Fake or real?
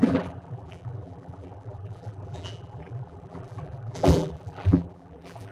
fake